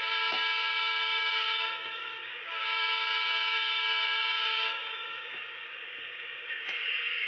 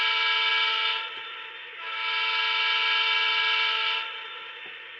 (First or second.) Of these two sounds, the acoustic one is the second